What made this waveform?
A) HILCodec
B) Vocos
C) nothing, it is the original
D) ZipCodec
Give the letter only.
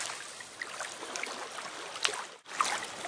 C